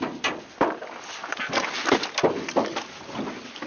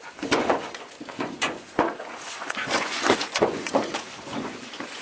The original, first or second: first